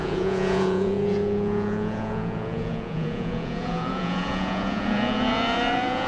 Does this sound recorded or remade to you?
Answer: remade